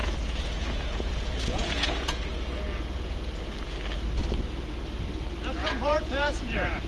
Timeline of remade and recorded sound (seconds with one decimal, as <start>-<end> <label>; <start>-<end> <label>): 0.0-3.4 remade; 3.4-5.6 recorded; 5.6-6.9 remade